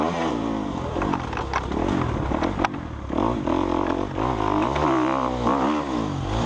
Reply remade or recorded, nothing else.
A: recorded